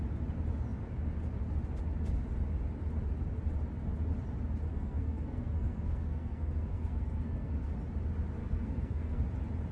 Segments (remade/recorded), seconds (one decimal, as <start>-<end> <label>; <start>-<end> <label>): 0.0-4.7 recorded; 4.7-7.7 remade; 7.7-8.4 recorded; 8.4-9.2 remade; 9.2-9.7 recorded